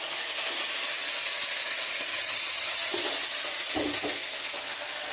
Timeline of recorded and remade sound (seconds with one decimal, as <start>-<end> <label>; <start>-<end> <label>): 0.0-2.1 recorded; 2.1-2.9 remade; 2.9-5.1 recorded